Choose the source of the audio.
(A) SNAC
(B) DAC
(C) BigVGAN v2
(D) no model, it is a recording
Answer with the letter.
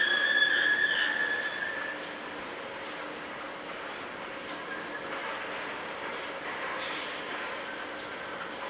D